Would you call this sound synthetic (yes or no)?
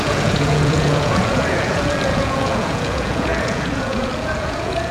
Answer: yes